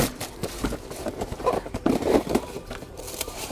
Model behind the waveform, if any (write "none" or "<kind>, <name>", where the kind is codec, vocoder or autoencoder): vocoder, BigVGAN v2